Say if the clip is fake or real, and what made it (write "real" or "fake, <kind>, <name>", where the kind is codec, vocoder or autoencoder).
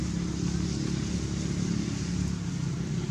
real